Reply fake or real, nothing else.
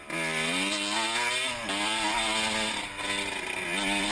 real